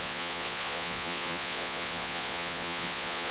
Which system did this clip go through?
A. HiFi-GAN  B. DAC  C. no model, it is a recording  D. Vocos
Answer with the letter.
D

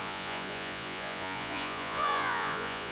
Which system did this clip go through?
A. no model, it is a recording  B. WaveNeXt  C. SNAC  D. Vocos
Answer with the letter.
D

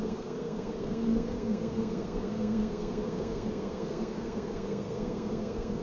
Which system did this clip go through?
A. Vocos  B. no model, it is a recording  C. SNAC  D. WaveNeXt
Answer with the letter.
C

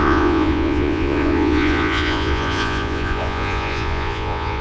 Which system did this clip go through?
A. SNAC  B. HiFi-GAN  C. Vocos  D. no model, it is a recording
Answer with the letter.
C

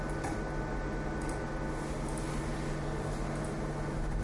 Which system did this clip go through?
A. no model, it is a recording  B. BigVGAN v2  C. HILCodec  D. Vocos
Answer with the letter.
A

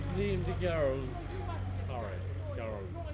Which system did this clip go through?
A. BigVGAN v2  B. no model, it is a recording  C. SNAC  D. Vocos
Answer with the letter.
B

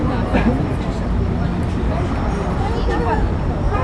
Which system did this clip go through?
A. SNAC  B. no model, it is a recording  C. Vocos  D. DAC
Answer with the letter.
B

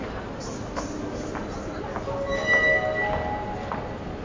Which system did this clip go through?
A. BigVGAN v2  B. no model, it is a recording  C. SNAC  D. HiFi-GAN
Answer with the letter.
B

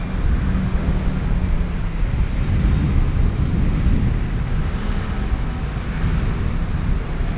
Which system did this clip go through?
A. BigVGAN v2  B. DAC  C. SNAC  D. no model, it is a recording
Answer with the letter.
D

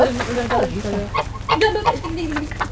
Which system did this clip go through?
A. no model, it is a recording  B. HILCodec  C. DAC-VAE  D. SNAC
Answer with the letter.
A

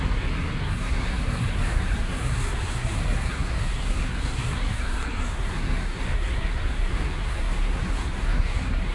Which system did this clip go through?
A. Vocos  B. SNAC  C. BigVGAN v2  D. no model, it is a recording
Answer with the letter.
B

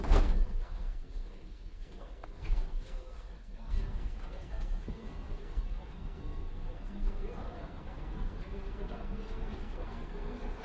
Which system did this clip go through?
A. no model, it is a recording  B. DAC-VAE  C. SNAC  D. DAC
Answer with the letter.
C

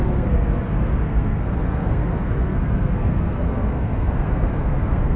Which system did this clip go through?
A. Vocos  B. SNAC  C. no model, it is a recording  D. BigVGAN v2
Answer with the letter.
B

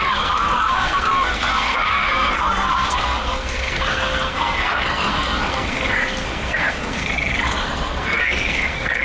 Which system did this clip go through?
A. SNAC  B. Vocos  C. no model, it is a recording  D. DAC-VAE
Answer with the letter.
A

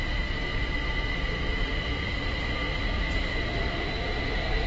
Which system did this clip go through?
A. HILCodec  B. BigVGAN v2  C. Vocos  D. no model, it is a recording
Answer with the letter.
B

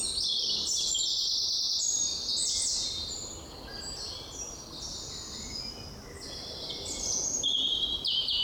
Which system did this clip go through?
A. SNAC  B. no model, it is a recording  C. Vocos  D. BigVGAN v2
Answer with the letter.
B